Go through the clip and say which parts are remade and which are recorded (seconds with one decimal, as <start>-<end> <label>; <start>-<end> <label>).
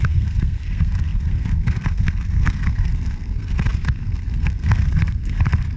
0.0-5.8 remade